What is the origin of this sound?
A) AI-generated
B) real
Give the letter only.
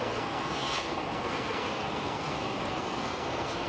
A